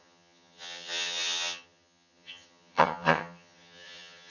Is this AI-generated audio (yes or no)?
yes